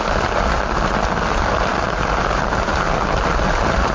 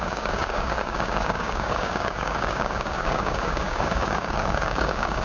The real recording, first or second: first